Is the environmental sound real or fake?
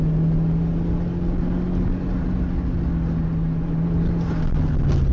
real